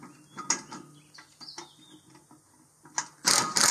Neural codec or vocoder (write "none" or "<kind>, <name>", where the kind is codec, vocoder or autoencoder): none